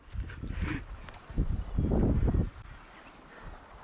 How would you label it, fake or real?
real